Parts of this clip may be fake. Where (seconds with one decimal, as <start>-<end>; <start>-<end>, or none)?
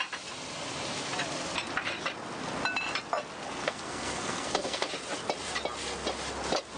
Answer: 3.6-4.9